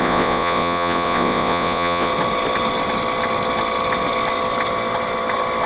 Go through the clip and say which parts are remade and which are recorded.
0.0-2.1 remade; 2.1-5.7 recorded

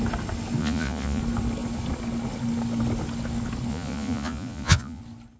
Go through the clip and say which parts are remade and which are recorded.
0.0-0.6 recorded; 0.6-1.2 remade; 1.2-3.7 recorded; 3.7-5.0 remade; 5.0-5.4 recorded

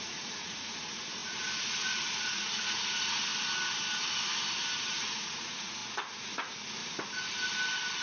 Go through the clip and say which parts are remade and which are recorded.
0.0-3.3 remade; 3.3-4.9 recorded; 4.9-6.8 remade; 6.8-8.0 recorded

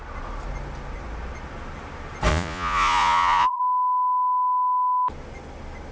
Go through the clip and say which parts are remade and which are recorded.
0.0-2.3 recorded; 2.3-3.6 remade; 3.6-5.9 recorded

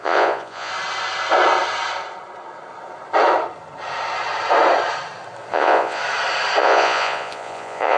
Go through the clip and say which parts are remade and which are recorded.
0.0-0.7 remade; 0.7-5.5 recorded; 5.5-6.0 remade; 6.0-6.6 recorded; 6.6-8.0 remade